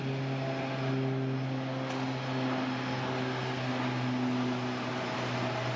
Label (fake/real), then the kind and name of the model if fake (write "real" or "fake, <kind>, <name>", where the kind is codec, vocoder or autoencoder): real